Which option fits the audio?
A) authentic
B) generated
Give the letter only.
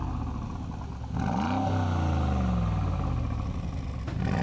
A